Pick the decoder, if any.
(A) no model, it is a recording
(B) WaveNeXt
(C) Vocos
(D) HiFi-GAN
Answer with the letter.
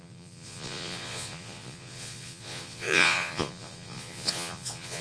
C